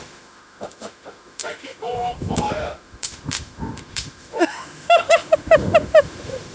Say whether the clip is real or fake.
fake